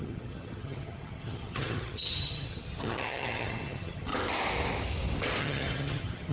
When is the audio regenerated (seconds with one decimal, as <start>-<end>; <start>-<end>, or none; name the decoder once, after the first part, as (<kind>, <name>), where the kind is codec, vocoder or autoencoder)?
0.0-4.1 (vocoder, HiFi-GAN); 5.4-6.3